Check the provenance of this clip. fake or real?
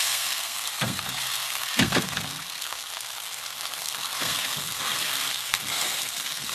fake